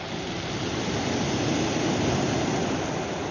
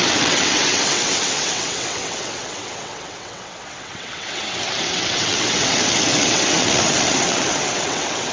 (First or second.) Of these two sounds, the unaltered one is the first